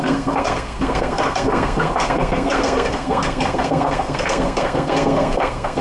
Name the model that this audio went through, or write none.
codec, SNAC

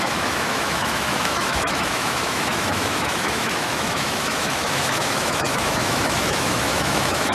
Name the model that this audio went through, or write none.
autoencoder, DAC-VAE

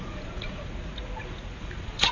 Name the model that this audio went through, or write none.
vocoder, Vocos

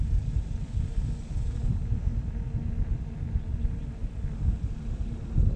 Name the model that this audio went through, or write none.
none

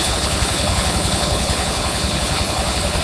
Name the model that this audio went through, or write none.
codec, HILCodec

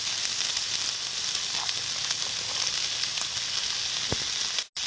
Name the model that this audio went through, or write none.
none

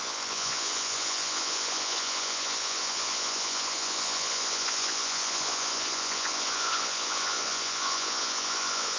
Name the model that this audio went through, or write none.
vocoder, Vocos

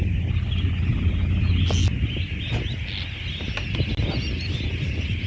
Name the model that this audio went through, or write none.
none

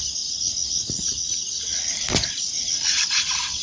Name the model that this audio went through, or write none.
none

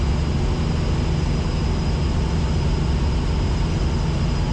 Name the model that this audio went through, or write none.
none